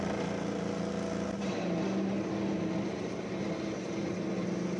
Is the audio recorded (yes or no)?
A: yes